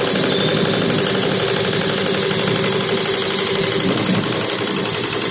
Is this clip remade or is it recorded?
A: recorded